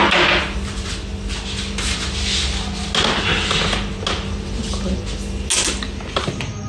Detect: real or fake real